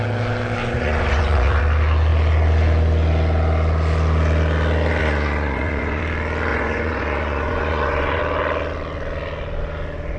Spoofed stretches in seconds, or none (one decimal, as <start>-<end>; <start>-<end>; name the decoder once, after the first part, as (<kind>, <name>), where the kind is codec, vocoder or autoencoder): 0.6-1.6 (vocoder, Vocos); 5.0-6.0; 6.5-8.2